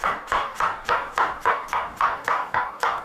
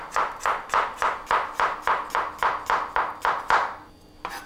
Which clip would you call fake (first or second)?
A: first